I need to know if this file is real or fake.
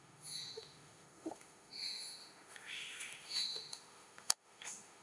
fake